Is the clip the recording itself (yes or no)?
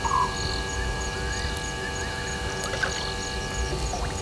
yes